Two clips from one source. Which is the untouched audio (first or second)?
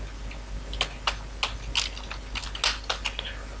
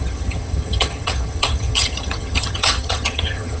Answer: first